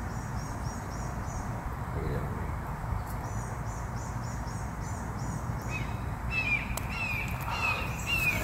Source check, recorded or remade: remade